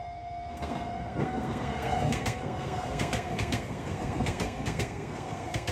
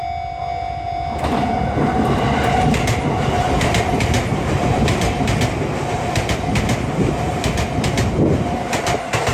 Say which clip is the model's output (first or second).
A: first